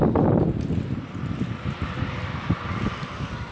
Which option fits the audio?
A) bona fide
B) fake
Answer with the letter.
A